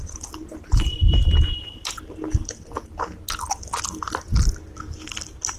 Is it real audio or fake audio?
real